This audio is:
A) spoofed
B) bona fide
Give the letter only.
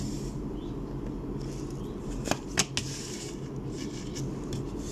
B